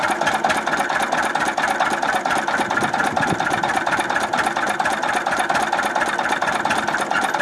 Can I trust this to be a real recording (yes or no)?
yes